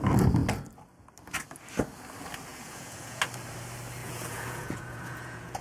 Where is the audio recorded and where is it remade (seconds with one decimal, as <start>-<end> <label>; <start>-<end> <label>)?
0.0-2.5 recorded; 2.5-3.2 remade; 3.2-4.0 recorded; 4.0-5.6 remade

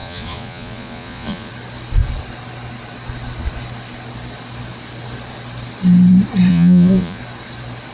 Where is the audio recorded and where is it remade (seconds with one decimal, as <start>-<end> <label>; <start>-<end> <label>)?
0.0-1.5 remade; 1.5-6.5 recorded; 6.5-7.2 remade; 7.2-7.9 recorded

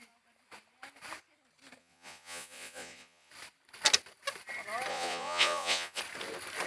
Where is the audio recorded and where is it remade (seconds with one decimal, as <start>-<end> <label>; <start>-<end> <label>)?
0.0-1.8 recorded; 1.8-3.3 remade; 3.3-4.9 recorded; 4.9-6.0 remade; 6.0-6.7 recorded